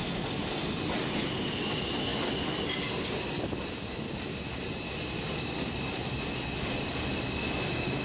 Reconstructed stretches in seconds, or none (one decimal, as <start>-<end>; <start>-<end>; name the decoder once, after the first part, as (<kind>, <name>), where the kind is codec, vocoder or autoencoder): none